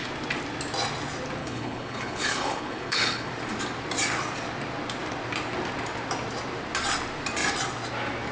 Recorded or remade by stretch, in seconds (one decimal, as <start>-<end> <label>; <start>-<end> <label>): 0.0-1.4 recorded; 1.4-3.3 remade; 3.3-8.3 recorded